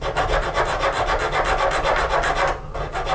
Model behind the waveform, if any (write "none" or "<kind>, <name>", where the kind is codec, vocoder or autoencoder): none